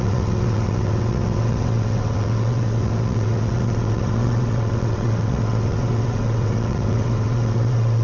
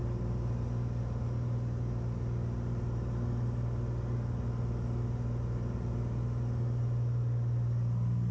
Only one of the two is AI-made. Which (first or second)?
first